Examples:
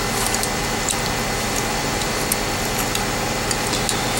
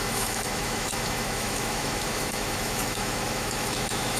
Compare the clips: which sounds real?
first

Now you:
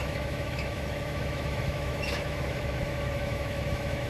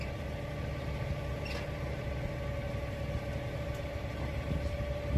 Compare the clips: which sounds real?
second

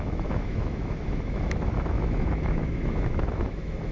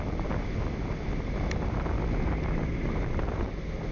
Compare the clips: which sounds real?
second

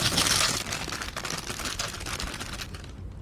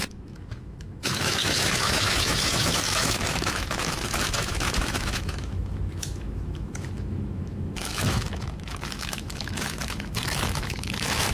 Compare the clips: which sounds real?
first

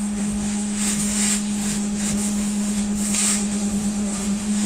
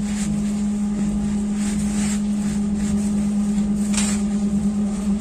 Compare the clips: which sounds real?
second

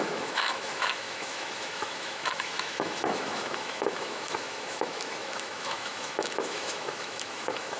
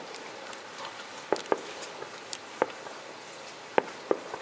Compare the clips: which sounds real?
second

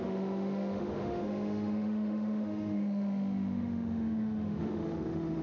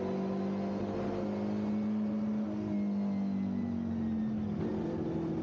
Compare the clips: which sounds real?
second